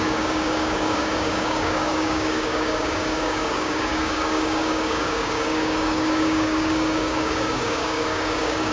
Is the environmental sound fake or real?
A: fake